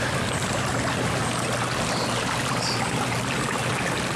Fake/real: real